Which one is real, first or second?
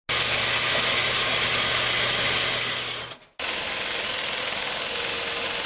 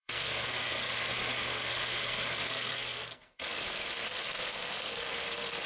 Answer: first